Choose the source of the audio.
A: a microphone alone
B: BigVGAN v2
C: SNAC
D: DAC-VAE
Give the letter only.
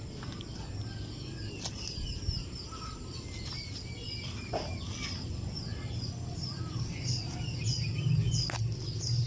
A